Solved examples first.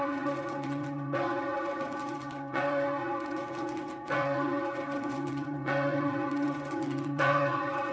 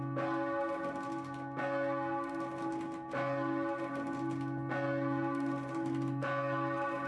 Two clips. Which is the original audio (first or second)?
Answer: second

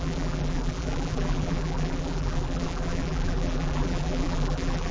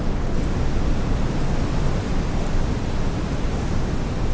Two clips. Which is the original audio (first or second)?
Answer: second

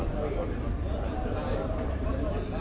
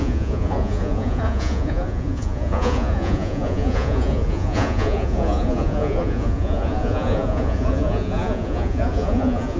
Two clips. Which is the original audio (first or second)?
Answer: first